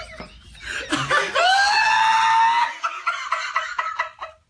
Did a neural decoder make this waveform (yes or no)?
no